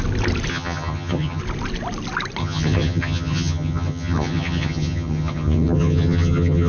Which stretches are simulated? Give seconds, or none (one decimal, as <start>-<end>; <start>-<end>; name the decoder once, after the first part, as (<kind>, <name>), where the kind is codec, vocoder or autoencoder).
0.5-1.4 (vocoder, HiFi-GAN); 2.4-6.7